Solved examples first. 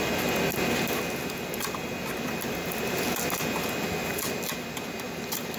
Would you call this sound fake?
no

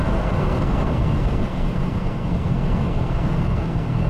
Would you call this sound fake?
yes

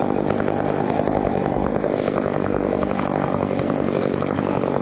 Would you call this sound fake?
yes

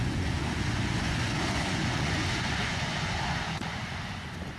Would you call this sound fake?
yes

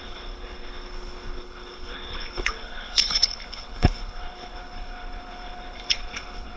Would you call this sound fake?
yes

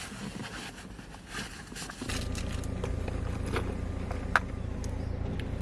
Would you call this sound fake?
no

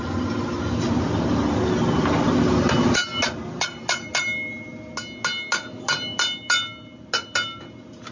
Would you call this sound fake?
no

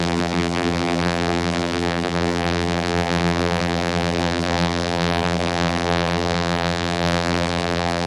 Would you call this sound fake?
yes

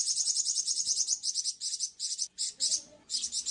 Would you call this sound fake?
yes